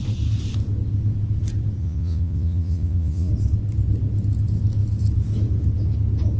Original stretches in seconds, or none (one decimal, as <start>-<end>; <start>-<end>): 0.0-1.8; 3.3-6.4